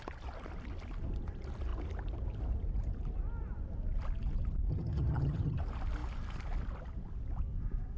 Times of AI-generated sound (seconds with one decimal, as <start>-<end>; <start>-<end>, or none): 4.7-5.6